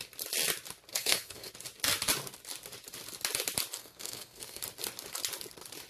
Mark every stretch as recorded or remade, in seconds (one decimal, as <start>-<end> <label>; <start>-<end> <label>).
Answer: 0.0-0.9 recorded; 0.9-1.5 remade; 1.5-3.8 recorded; 3.8-4.6 remade; 4.6-5.9 recorded